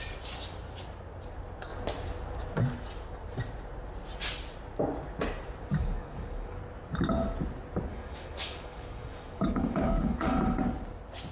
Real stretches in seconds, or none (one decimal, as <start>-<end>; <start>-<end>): 0.0-5.7; 6.6-7.9; 10.3-11.3